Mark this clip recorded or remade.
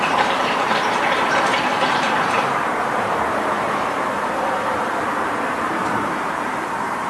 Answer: remade